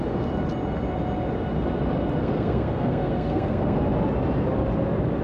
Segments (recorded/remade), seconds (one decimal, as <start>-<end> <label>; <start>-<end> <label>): 0.0-2.2 recorded; 2.2-3.8 remade; 3.8-5.2 recorded